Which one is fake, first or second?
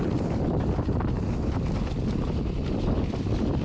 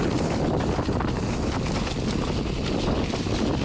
first